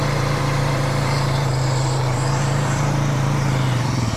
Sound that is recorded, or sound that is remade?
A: remade